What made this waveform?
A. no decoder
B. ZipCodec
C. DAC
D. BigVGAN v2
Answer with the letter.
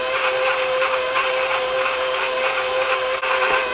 A